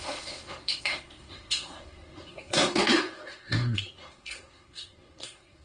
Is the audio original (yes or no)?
no